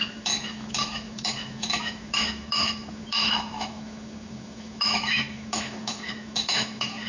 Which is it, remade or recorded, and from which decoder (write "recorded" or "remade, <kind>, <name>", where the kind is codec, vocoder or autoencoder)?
remade, autoencoder, DAC-VAE